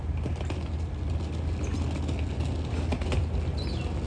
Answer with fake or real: real